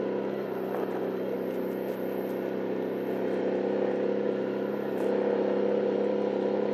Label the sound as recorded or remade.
recorded